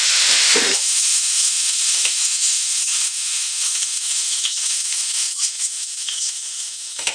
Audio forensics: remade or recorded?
remade